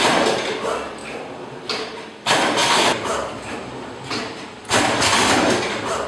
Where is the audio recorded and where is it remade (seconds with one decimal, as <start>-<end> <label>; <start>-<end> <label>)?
0.0-6.1 recorded